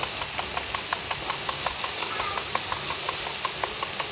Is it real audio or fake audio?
real